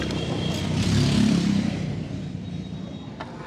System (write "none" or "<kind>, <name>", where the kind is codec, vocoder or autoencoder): vocoder, BigVGAN v2